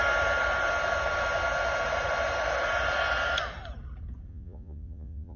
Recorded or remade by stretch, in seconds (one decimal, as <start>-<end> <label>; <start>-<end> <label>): 0.0-4.3 recorded; 4.3-5.4 remade